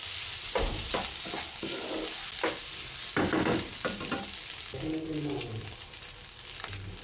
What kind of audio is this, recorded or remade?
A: recorded